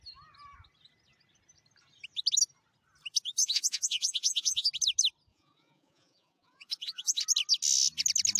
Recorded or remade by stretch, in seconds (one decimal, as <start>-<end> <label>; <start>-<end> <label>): 0.0-3.4 recorded; 3.4-4.7 remade; 4.7-5.3 recorded; 5.3-7.2 remade; 7.2-8.4 recorded

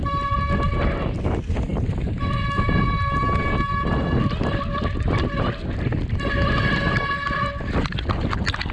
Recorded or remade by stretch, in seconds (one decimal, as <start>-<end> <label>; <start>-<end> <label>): 0.0-8.7 recorded

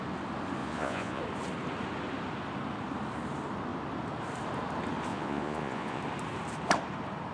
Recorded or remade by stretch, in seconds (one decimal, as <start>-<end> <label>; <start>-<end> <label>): 0.0-0.6 recorded; 0.6-1.2 remade; 1.2-5.1 recorded; 5.1-6.0 remade; 6.0-7.3 recorded

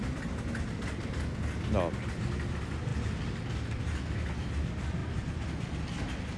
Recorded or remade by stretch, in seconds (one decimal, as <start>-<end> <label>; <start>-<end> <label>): 0.0-6.4 recorded

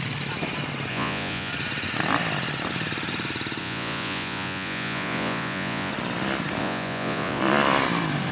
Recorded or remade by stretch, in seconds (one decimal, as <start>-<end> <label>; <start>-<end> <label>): 0.0-0.9 recorded; 0.9-1.5 remade; 1.5-3.6 recorded; 3.6-5.9 remade; 5.9-6.6 recorded; 6.6-7.4 remade; 7.4-8.3 recorded

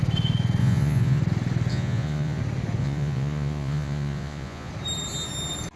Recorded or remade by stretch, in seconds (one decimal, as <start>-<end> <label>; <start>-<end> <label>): 0.0-0.6 recorded; 0.6-1.2 remade; 1.2-1.7 recorded; 1.7-2.4 remade; 2.4-2.8 recorded; 2.8-4.7 remade; 4.7-5.8 recorded

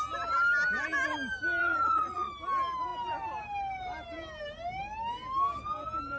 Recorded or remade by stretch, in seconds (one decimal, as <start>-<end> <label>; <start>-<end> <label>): 0.0-1.6 recorded; 1.6-2.3 remade; 2.3-6.2 recorded

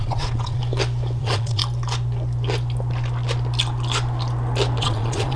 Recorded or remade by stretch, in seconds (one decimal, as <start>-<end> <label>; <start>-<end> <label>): 0.0-0.6 remade; 0.6-1.2 recorded; 1.2-1.6 remade; 1.6-4.8 recorded; 4.8-5.4 remade